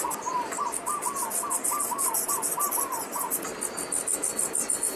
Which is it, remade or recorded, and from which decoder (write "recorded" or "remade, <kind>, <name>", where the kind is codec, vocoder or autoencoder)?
recorded